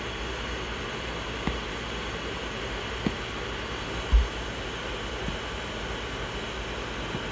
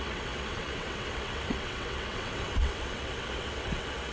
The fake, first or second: second